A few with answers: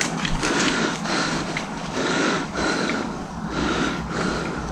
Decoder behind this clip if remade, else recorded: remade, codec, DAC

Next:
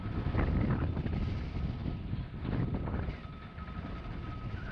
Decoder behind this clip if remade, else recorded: recorded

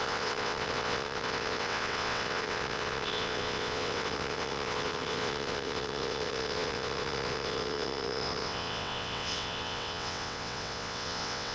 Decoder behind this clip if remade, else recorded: remade, vocoder, WaveNeXt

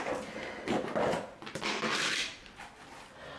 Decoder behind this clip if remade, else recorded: recorded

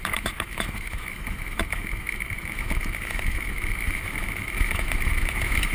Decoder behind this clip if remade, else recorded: remade, autoencoder, DAC-VAE